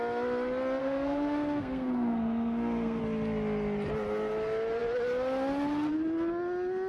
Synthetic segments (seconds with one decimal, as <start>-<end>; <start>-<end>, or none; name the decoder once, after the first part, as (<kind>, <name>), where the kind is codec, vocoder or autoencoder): 0.8-3.0 (codec, SNAC)